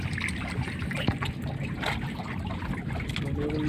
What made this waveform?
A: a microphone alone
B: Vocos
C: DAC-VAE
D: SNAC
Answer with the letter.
A